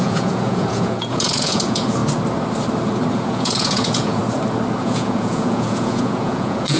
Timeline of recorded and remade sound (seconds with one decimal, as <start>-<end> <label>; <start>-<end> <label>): 0.0-2.0 remade; 2.0-3.1 recorded; 3.1-4.2 remade; 4.2-4.8 recorded; 4.8-6.8 remade